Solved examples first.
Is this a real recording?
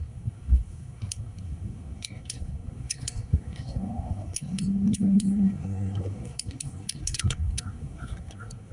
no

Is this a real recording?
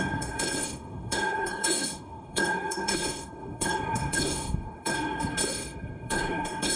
no